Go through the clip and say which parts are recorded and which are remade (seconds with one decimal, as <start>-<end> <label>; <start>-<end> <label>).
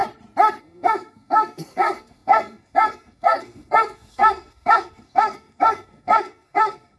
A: 0.0-0.6 recorded; 0.6-7.0 remade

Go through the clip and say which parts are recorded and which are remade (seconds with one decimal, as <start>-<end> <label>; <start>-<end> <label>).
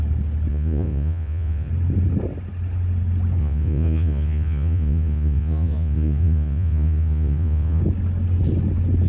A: 0.0-0.5 recorded; 0.5-1.7 remade; 1.7-3.4 recorded; 3.4-7.8 remade; 7.8-9.1 recorded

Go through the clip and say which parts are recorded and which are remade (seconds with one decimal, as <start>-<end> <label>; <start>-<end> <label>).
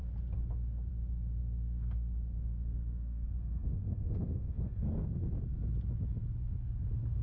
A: 0.0-1.4 recorded; 1.4-5.4 remade; 5.4-7.2 recorded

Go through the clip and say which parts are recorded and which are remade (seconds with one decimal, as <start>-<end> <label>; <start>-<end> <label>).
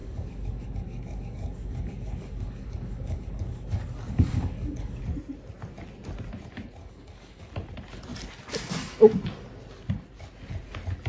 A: 0.0-5.0 remade; 5.0-6.8 recorded; 6.8-7.5 remade; 7.5-11.1 recorded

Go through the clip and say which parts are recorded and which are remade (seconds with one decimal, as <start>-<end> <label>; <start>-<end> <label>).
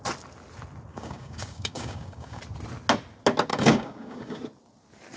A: 0.0-0.9 recorded; 0.9-2.4 remade; 2.4-3.5 recorded; 3.5-4.4 remade; 4.4-5.2 recorded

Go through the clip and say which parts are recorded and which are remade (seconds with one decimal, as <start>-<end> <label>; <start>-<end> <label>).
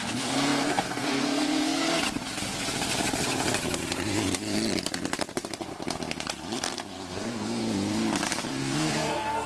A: 0.0-1.8 remade; 1.8-7.1 recorded; 7.1-7.6 remade; 7.6-8.5 recorded; 8.5-9.5 remade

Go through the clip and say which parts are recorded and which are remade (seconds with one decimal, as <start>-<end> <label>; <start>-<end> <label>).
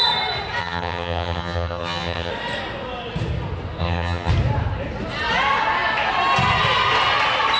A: 0.0-0.6 recorded; 0.6-2.3 remade; 2.3-3.8 recorded; 3.8-4.3 remade; 4.3-7.6 recorded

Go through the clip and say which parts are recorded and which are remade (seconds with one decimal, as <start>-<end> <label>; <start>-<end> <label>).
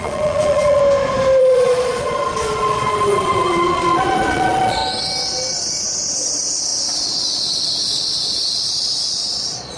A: 0.0-0.8 remade; 0.8-1.4 recorded; 1.4-4.8 remade; 4.8-6.1 recorded; 6.1-9.8 remade